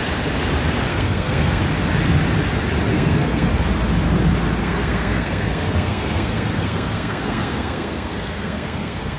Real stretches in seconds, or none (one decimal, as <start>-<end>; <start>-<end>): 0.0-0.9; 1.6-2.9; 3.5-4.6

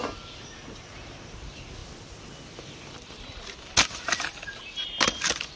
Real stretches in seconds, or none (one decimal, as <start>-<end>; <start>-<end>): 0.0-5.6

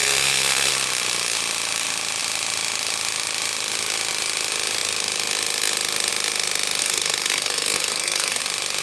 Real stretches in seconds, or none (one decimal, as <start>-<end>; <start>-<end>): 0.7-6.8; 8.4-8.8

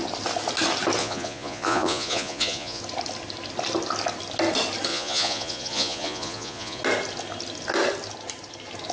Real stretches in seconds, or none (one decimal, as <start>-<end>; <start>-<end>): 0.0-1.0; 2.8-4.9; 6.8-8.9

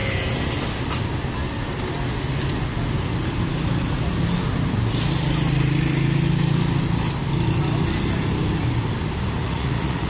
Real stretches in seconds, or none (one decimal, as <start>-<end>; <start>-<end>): 0.0-9.4

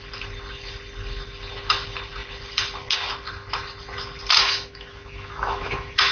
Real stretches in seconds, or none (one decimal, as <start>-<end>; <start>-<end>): 0.0-4.4